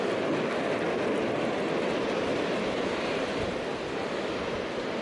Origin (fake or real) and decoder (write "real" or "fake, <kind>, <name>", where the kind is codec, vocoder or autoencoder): real